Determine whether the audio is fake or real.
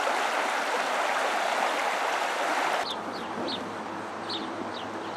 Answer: real